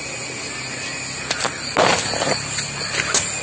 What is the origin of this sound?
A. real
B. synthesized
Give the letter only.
A